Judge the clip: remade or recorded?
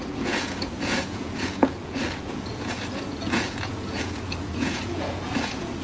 remade